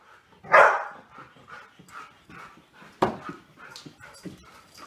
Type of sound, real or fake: real